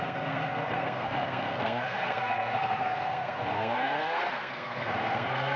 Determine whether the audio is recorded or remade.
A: remade